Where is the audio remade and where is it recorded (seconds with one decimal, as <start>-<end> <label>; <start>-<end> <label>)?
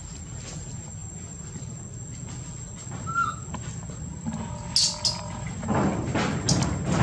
0.0-7.0 recorded